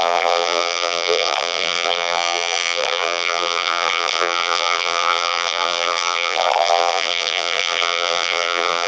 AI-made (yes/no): yes